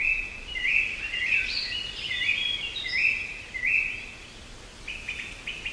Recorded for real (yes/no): yes